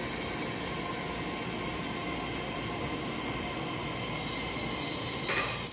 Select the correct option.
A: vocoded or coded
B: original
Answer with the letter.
B